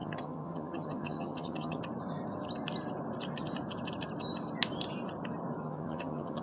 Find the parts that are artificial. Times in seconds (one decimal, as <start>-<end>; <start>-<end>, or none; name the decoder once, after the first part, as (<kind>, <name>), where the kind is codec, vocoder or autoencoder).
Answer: 0.0-1.8 (vocoder, HiFi-GAN); 5.6-6.4